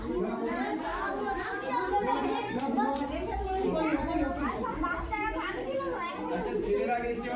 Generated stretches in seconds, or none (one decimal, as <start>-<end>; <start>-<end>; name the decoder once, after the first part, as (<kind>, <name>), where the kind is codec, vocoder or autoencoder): 0.9-1.7 (autoencoder, DAC-VAE)